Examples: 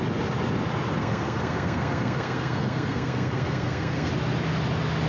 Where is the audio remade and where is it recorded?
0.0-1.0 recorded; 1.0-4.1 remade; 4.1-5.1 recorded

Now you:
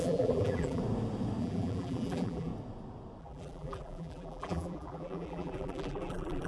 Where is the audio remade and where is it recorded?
0.0-0.8 remade; 0.8-1.4 recorded; 1.4-2.5 remade; 2.5-3.2 recorded; 3.2-6.5 remade

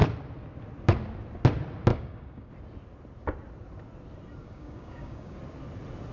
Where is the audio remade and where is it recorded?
0.0-1.9 recorded; 1.9-2.5 remade; 2.5-4.4 recorded; 4.4-5.4 remade; 5.4-6.1 recorded